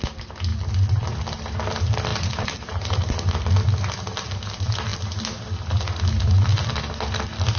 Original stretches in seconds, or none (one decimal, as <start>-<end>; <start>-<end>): 0.0-2.1; 3.5-7.6